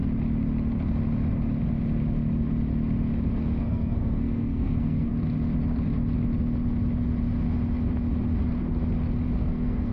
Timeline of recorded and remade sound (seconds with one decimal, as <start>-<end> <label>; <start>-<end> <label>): 0.0-3.6 recorded; 3.6-5.1 remade; 5.1-9.4 recorded; 9.4-9.9 remade